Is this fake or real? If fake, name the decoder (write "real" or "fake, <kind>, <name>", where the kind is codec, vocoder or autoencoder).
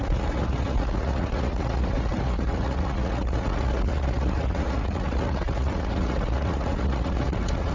fake, vocoder, Vocos